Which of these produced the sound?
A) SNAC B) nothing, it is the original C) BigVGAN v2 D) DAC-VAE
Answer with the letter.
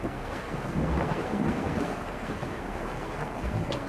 A